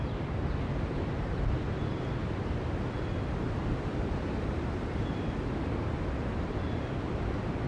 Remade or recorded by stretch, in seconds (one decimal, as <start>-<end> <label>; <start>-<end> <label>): 0.0-7.7 recorded